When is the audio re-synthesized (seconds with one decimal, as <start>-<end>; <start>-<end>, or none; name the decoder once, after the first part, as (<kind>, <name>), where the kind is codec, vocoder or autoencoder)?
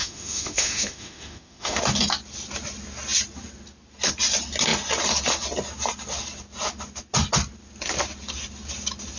0.0-1.8 (autoencoder, DAC-VAE)